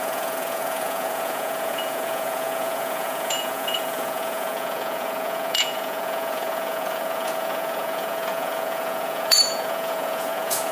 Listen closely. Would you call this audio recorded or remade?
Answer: remade